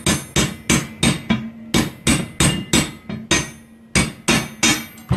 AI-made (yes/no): no